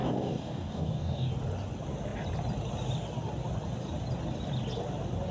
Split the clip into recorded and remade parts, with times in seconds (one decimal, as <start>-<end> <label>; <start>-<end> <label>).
0.0-1.3 remade; 1.3-5.3 recorded